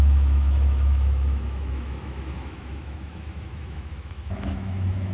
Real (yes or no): no